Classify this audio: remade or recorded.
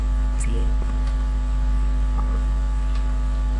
remade